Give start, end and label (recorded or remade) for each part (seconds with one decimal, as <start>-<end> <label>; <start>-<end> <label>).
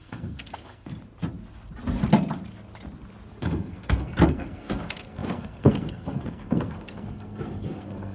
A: 0.0-0.9 remade; 0.9-3.4 recorded; 3.4-8.1 remade